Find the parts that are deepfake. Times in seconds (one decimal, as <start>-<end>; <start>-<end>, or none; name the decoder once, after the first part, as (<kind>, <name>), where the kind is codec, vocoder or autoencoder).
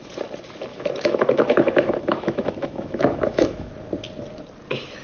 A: 0.7-3.7 (autoencoder, DAC-VAE)